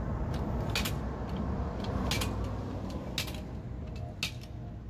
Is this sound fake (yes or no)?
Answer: no